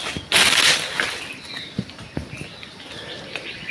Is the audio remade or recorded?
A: recorded